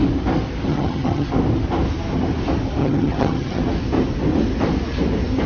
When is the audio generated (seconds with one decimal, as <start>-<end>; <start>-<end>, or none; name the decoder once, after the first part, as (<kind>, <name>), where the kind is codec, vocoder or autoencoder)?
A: 0.7-1.3 (vocoder, HiFi-GAN); 2.8-3.6